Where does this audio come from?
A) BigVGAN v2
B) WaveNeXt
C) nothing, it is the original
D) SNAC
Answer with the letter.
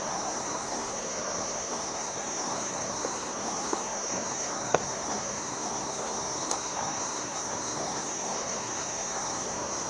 D